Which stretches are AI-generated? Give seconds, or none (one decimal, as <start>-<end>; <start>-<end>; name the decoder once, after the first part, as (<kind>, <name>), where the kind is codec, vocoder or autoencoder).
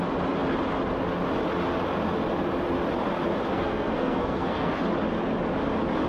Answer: 3.5-4.8 (codec, SNAC)